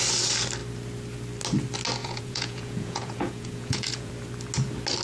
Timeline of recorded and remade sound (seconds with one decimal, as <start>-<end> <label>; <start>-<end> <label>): 0.0-2.0 recorded; 2.0-4.1 remade; 4.1-5.0 recorded